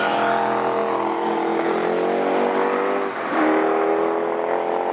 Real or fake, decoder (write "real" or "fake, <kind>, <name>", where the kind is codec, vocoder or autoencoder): real